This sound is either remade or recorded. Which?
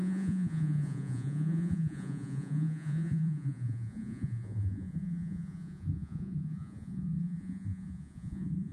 remade